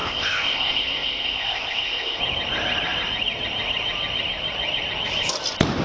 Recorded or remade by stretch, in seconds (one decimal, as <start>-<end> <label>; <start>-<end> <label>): 0.0-2.2 remade; 2.2-5.8 recorded